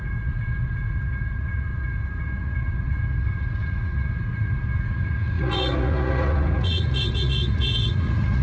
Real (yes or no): no